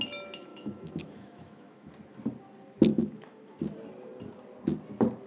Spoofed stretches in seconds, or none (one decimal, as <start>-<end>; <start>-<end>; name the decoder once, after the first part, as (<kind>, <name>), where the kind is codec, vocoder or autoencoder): 0.5-1.9 (autoencoder, DAC-VAE); 2.9-3.6